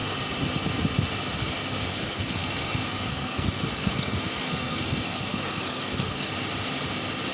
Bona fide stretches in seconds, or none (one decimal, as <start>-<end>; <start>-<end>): 0.0-1.9; 6.3-7.3